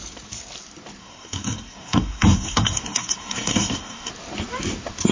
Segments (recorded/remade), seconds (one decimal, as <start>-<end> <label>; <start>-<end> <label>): 0.0-1.0 recorded; 1.0-4.1 remade; 4.1-5.1 recorded